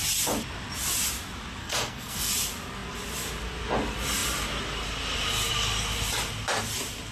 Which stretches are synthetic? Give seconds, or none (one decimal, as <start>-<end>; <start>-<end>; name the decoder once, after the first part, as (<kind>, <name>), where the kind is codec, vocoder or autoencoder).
1.6-2.3 (codec, SNAC)

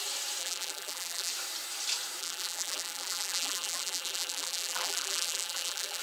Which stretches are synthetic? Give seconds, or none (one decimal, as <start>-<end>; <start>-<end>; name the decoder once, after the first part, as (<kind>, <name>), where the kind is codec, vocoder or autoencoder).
0.4-1.3 (vocoder, BigVGAN v2); 2.2-6.0

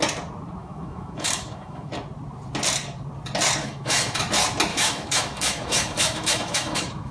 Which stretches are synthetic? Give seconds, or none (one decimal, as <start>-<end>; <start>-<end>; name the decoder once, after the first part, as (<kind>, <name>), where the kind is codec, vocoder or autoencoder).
0.6-1.9 (autoencoder, DAC-VAE); 3.6-4.2; 4.7-7.1

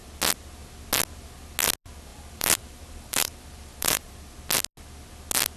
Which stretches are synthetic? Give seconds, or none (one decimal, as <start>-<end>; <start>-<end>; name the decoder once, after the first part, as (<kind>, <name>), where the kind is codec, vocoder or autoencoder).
2.1-4.1 (vocoder, BigVGAN v2)

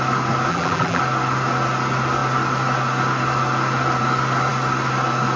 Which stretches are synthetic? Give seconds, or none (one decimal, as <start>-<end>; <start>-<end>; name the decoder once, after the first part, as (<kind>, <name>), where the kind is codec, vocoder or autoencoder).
0.5-1.0 (vocoder, BigVGAN v2)